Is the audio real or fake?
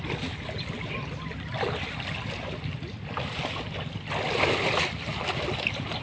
real